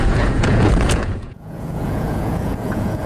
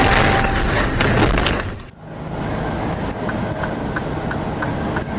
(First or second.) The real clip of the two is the second